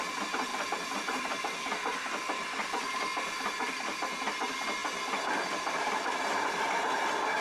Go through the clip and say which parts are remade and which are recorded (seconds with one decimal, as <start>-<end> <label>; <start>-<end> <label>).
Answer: 0.0-7.4 recorded